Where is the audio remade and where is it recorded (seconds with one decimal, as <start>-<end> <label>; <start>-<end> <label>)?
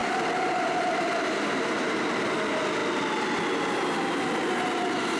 0.0-5.2 recorded